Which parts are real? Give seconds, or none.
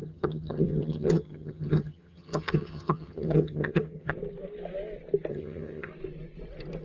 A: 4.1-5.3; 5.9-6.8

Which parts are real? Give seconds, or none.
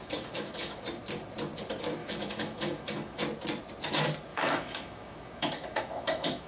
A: 0.8-2.0; 3.2-4.3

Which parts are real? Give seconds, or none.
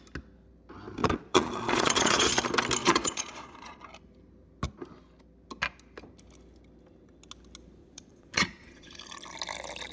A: 0.0-1.0; 2.3-2.8; 3.8-7.8; 9.0-9.9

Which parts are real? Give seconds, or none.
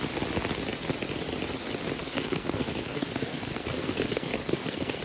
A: 0.0-2.0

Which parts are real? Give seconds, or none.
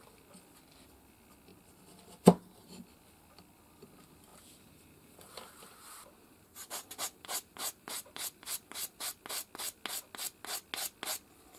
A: 0.0-4.3; 9.0-11.6